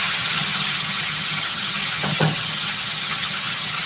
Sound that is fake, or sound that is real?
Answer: fake